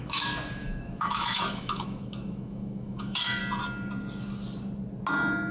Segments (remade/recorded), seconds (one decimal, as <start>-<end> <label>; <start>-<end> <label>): 0.0-3.4 remade; 3.4-5.5 recorded